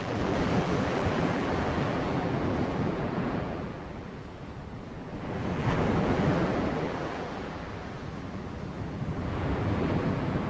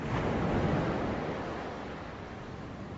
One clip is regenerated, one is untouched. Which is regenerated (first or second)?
first